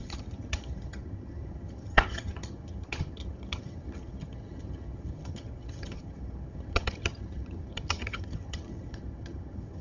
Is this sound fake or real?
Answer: fake